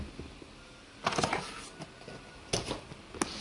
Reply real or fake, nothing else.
real